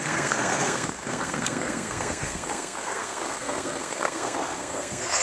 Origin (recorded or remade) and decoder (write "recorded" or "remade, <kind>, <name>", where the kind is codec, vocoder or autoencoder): remade, codec, SNAC